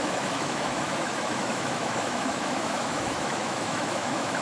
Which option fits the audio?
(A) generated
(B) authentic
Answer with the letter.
A